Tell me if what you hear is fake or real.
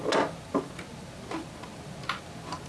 real